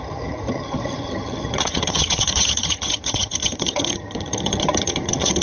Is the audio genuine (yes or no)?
no